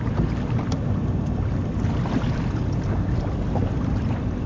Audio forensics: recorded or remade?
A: remade